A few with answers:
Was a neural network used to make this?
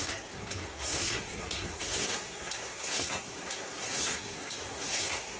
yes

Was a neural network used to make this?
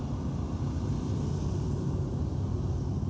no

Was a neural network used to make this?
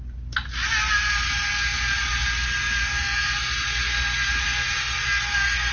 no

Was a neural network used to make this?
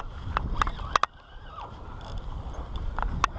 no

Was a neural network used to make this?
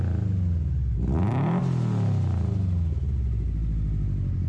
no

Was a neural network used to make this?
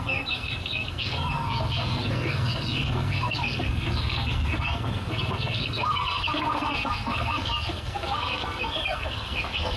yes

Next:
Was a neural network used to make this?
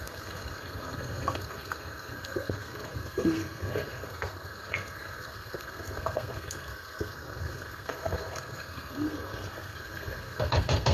yes